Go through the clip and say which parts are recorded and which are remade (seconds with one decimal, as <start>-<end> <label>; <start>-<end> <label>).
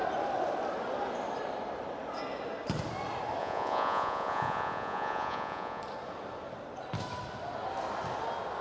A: 0.0-3.4 recorded; 3.4-5.8 remade; 5.8-8.6 recorded